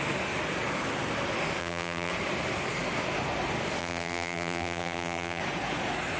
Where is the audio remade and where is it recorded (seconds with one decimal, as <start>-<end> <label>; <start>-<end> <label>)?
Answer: 0.0-1.6 recorded; 1.6-2.1 remade; 2.1-3.8 recorded; 3.8-5.4 remade; 5.4-6.2 recorded